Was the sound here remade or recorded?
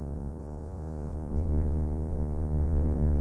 remade